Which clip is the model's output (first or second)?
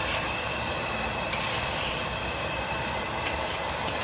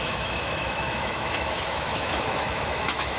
second